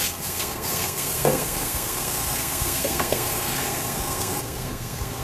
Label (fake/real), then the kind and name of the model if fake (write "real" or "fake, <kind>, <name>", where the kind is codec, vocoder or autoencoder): fake, codec, SNAC